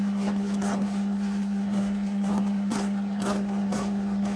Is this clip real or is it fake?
fake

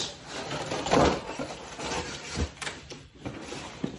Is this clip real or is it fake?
real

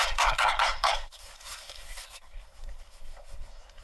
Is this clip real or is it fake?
fake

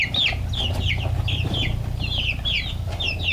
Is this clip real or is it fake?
real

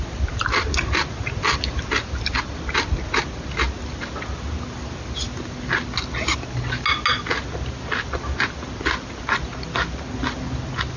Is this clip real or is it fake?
real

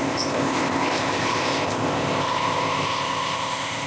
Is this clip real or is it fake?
fake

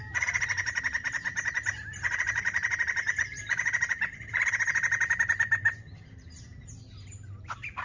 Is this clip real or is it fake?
real